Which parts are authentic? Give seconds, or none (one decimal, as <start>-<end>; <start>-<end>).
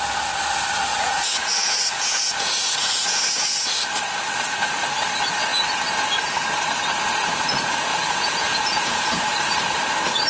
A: 0.0-0.9; 3.7-7.9; 9.2-10.3